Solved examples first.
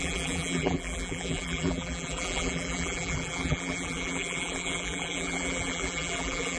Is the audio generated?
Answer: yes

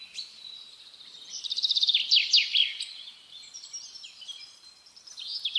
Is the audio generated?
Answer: yes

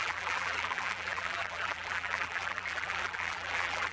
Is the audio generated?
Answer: yes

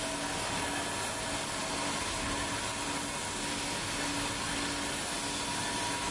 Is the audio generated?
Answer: no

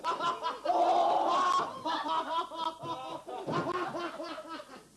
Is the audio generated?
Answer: no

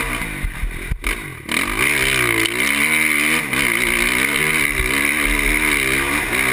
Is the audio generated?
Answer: no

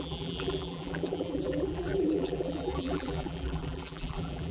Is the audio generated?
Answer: yes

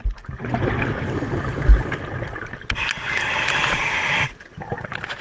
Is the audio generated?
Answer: no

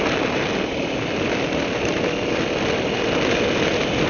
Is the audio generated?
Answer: no